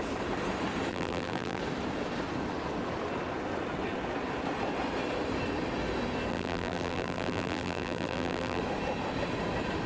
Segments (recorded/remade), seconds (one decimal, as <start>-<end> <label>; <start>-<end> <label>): 0.0-0.9 recorded; 0.9-1.6 remade; 1.6-6.3 recorded; 6.3-8.6 remade; 8.6-9.9 recorded